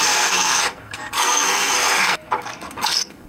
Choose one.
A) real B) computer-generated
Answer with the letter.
B